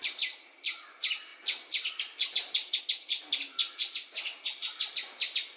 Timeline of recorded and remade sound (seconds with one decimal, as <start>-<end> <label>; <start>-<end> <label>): 0.0-5.6 recorded

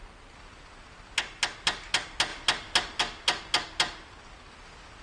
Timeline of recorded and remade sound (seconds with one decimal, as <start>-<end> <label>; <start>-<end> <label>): 0.0-5.0 recorded

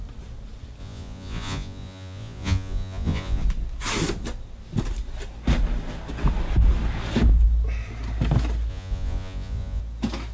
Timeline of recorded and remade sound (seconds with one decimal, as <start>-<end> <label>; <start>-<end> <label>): 0.0-0.8 recorded; 0.8-3.4 remade; 3.4-8.7 recorded; 8.7-9.8 remade; 9.8-10.3 recorded

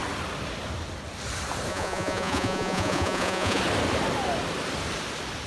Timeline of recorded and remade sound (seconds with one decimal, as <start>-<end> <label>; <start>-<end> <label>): 0.0-1.7 recorded; 1.7-3.6 remade; 3.6-5.5 recorded

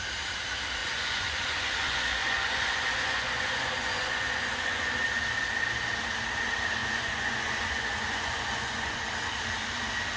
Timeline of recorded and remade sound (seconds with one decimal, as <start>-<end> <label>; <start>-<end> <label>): 0.0-0.8 recorded; 0.8-4.9 remade; 4.9-6.8 recorded; 6.8-9.1 remade; 9.1-10.2 recorded

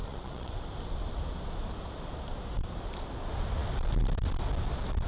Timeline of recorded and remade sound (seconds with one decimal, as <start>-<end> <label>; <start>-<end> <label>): 0.0-0.6 remade; 0.6-5.1 recorded

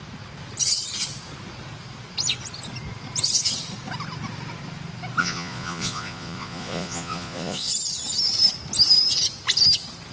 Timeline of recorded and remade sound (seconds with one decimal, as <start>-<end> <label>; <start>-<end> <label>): 0.0-5.2 recorded; 5.2-7.7 remade; 7.7-10.1 recorded